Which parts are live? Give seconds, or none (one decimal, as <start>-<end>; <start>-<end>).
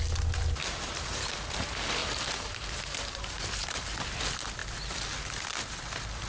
0.0-0.6; 1.3-2.0; 3.8-6.3